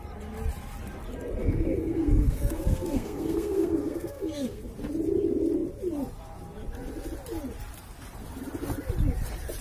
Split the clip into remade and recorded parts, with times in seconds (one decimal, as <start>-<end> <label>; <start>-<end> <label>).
0.0-1.4 recorded; 1.4-4.6 remade; 4.6-9.6 recorded